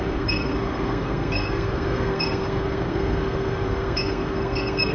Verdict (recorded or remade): remade